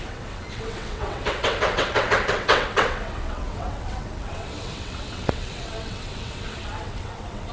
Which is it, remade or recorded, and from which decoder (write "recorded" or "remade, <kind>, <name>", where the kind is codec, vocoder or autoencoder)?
remade, vocoder, WaveNeXt